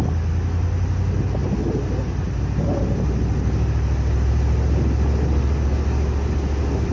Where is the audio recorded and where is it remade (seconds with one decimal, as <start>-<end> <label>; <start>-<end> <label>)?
0.0-6.9 recorded